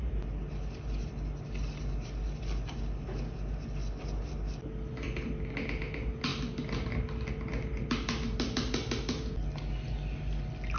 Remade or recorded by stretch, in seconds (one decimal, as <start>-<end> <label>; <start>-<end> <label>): 0.0-10.8 recorded